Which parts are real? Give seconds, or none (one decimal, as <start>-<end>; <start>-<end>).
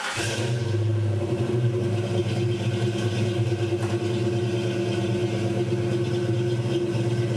0.0-7.4